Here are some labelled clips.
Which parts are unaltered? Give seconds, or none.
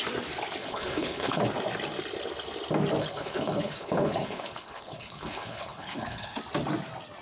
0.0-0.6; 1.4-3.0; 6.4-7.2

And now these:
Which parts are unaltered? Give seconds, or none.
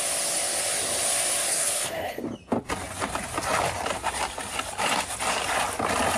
0.0-1.5; 2.2-6.2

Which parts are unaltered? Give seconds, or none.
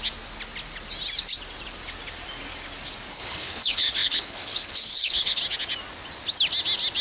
0.0-3.1; 5.4-7.0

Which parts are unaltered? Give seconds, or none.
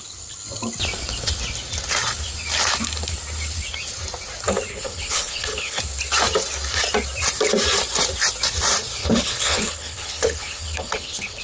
0.0-4.7; 5.8-9.0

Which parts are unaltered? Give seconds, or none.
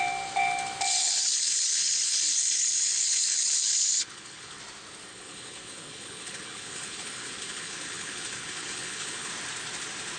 0.0-1.0; 4.6-5.1; 9.3-10.2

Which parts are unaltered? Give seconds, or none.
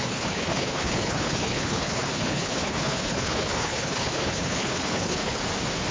5.4-5.9